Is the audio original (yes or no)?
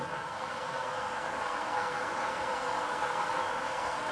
no